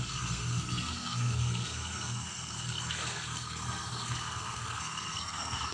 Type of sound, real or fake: fake